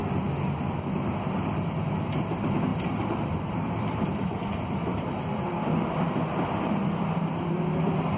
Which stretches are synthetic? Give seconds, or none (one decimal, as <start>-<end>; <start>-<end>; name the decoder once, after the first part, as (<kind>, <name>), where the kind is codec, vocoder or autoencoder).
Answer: 0.6-8.2 (vocoder, BigVGAN v2)